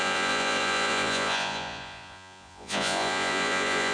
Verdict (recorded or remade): remade